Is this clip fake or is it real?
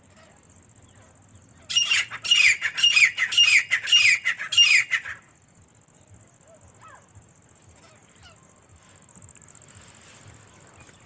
real